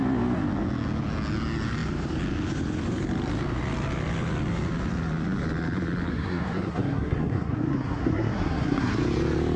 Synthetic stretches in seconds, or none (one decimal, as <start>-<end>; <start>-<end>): 6.1-8.9